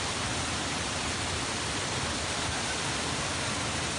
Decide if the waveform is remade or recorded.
recorded